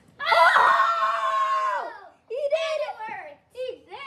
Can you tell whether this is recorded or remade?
recorded